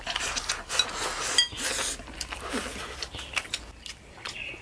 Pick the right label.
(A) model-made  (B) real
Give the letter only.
B